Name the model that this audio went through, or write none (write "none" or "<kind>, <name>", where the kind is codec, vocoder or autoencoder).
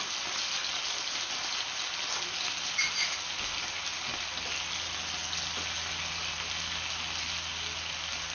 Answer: none